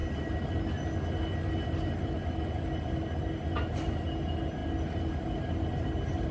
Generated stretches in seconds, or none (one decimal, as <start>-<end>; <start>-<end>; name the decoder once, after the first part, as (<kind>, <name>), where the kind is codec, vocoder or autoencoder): none